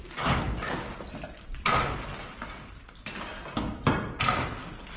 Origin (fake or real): real